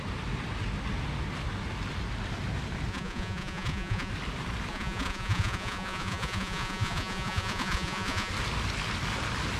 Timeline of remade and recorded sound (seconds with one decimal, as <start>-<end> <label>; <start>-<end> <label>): 0.0-2.9 recorded; 2.9-4.1 remade; 4.1-4.7 recorded; 4.7-8.3 remade; 8.3-9.6 recorded